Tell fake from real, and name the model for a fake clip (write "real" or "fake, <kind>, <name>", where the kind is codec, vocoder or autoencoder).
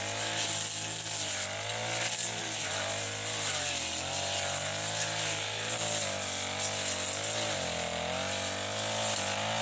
real